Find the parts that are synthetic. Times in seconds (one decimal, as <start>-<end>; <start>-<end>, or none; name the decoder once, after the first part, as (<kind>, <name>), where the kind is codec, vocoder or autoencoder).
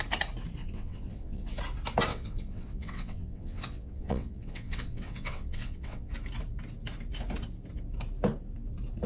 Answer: 0.6-1.6 (vocoder, WaveNeXt); 2.1-6.1